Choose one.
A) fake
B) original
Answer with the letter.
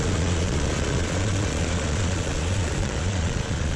A